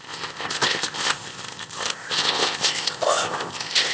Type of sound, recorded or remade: remade